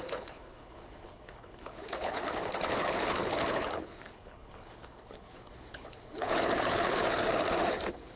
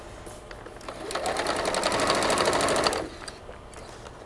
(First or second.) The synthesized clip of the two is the first